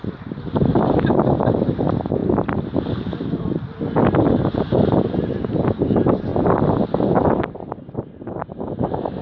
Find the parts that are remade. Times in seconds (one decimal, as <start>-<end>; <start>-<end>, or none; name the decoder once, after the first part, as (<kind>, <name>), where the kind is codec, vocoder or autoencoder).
none